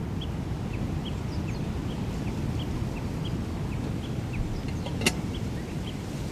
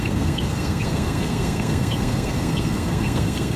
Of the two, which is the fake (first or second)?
second